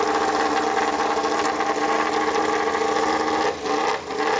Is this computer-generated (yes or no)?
no